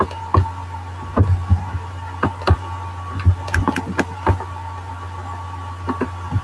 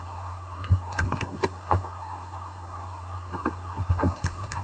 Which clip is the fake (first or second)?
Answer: second